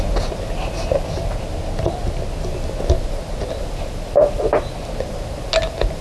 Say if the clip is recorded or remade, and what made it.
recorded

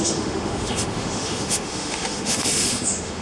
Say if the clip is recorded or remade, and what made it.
remade, autoencoder, DAC-VAE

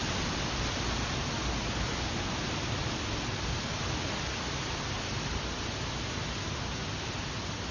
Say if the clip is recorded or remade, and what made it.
recorded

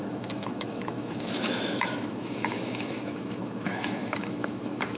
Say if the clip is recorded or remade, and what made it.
remade, autoencoder, DAC-VAE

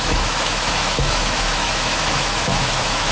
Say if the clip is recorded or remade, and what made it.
remade, autoencoder, DAC-VAE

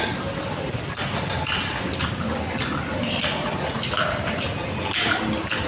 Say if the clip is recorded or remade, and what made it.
recorded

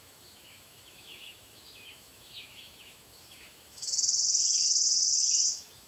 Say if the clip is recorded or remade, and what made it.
remade, autoencoder, DAC-VAE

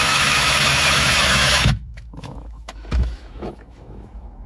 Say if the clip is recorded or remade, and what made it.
remade, autoencoder, DAC-VAE